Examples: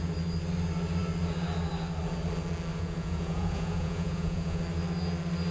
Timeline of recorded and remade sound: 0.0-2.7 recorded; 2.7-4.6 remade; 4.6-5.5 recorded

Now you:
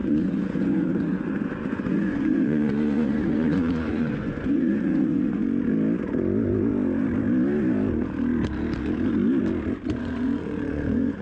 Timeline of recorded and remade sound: 0.0-5.4 remade; 5.4-10.0 recorded; 10.0-11.2 remade

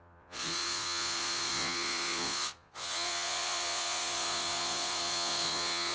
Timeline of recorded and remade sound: 0.0-5.9 remade

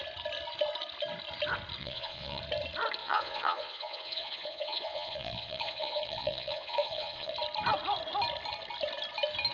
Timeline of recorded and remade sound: 0.0-1.8 recorded; 1.8-2.4 remade; 2.4-3.0 recorded; 3.0-7.3 remade; 7.3-9.5 recorded

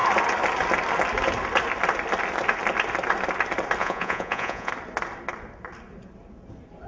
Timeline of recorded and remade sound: 0.0-3.8 recorded; 3.8-4.7 remade; 4.7-6.9 recorded

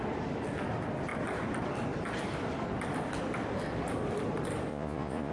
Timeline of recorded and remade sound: 0.0-4.7 recorded; 4.7-5.3 remade